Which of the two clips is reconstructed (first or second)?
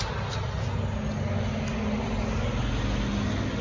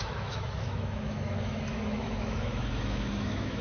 second